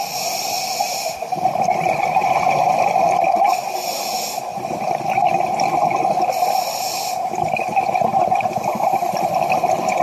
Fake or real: real